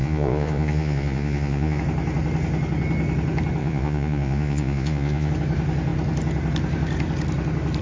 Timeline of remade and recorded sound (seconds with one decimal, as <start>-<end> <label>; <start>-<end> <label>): 0.0-1.8 remade; 1.8-3.6 recorded; 3.6-5.3 remade; 5.3-7.8 recorded